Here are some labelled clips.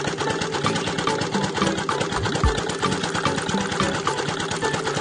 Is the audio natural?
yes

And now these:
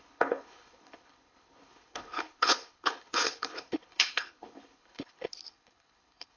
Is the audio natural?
no